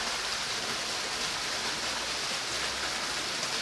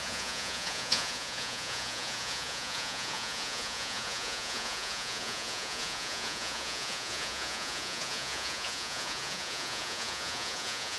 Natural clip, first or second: first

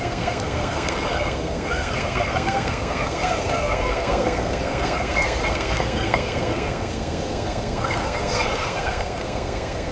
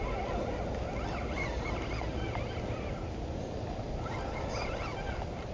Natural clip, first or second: second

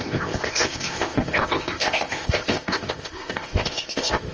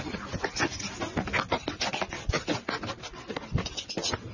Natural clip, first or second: second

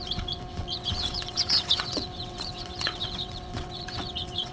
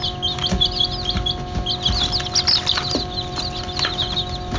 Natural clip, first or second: second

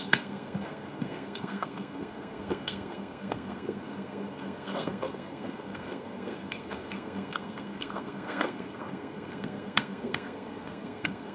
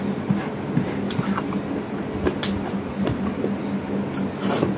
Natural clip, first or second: second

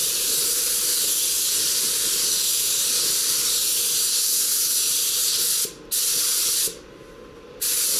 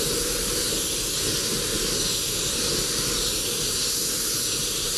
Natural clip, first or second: second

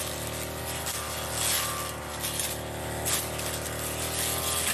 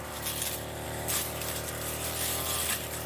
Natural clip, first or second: first